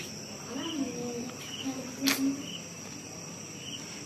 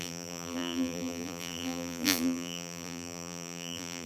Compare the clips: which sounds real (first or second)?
first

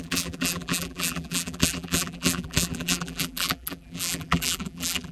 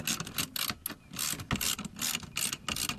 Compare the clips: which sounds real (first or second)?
second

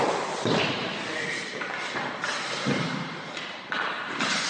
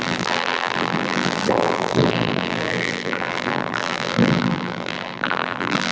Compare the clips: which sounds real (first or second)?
first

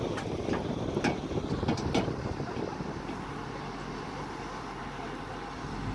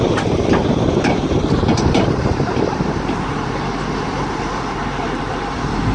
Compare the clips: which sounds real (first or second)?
first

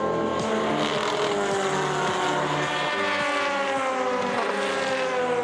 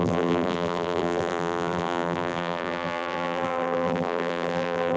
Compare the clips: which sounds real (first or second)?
first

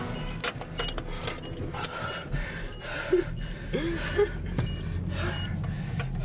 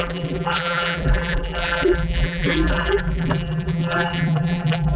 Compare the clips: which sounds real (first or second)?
first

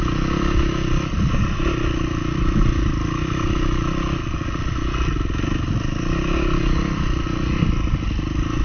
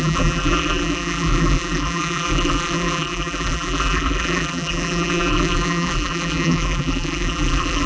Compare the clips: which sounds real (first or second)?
first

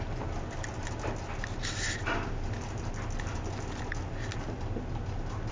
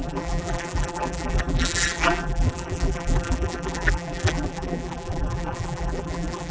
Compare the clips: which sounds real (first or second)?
first